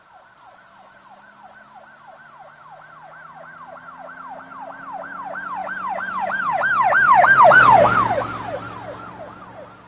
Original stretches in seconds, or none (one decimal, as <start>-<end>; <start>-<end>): 0.0-9.9